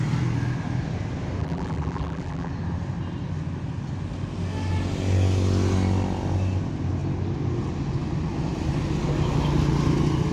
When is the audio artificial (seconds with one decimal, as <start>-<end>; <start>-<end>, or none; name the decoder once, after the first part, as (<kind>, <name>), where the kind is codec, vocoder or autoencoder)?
1.4-2.5 (vocoder, BigVGAN v2)